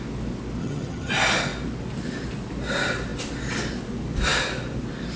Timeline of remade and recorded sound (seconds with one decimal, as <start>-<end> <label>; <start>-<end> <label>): 0.0-0.6 recorded; 0.6-1.1 remade; 1.1-5.2 recorded